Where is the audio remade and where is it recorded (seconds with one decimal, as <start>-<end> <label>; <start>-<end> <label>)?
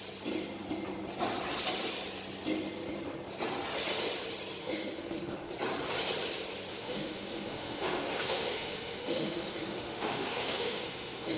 0.0-4.6 recorded; 4.6-5.5 remade; 5.5-6.7 recorded; 6.7-11.4 remade